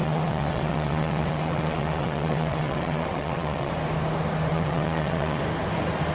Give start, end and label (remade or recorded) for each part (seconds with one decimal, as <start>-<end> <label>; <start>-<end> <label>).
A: 0.0-3.7 remade; 3.7-4.5 recorded; 4.5-5.4 remade; 5.4-6.1 recorded